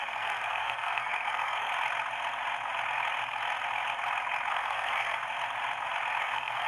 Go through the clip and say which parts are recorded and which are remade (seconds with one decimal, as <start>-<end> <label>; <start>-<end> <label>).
0.0-1.7 remade; 1.7-4.5 recorded; 4.5-5.2 remade; 5.2-6.2 recorded; 6.2-6.7 remade